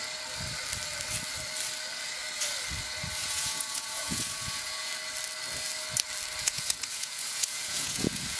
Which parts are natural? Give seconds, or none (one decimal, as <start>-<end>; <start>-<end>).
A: 0.0-3.2; 4.9-6.4